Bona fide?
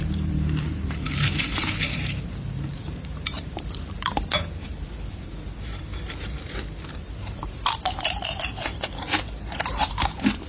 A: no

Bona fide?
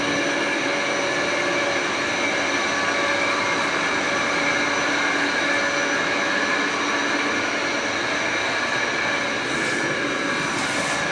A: yes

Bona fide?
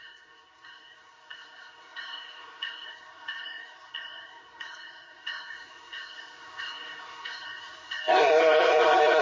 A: no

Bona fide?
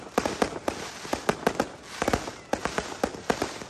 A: yes